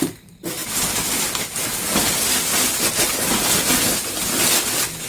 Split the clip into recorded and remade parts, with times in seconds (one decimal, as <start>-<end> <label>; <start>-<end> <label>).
0.0-5.1 recorded